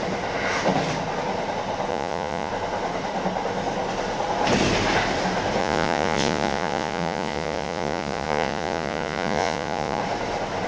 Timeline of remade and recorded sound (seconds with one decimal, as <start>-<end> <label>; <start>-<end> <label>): 0.0-1.9 recorded; 1.9-2.5 remade; 2.5-5.6 recorded; 5.6-10.0 remade; 10.0-10.7 recorded

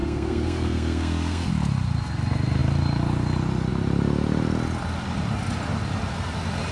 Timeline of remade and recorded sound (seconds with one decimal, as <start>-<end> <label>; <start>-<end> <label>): 0.0-1.5 remade; 1.5-6.7 recorded

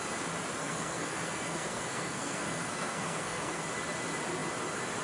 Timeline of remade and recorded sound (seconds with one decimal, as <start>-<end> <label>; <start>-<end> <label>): 0.0-0.6 recorded; 0.6-3.6 remade; 3.6-5.0 recorded

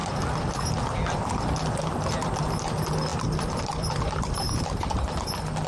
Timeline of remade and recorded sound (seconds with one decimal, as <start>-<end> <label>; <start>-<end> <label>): 0.0-3.1 recorded; 3.1-4.4 remade; 4.4-5.7 recorded

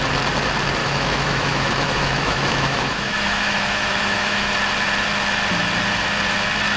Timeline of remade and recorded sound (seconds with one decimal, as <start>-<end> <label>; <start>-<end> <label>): 0.0-0.8 recorded; 0.8-4.5 remade; 4.5-6.8 recorded

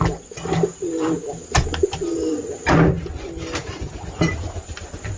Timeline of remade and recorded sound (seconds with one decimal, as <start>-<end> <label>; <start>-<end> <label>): 0.0-5.2 recorded

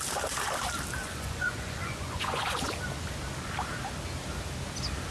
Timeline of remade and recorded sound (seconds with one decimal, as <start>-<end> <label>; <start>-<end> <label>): 0.0-1.0 recorded; 1.0-2.7 remade; 2.7-5.1 recorded